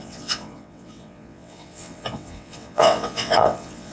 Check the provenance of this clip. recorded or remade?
remade